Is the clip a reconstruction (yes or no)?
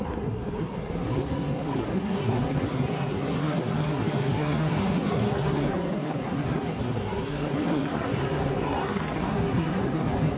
yes